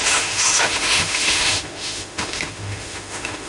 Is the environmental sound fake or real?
fake